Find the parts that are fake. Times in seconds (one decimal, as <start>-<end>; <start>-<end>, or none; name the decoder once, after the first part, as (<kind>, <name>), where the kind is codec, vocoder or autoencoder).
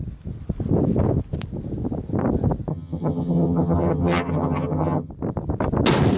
2.7-5.1 (vocoder, HiFi-GAN)